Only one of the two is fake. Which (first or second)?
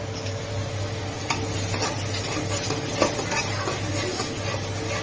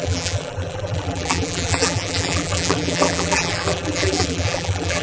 second